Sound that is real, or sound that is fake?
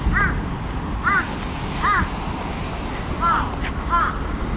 real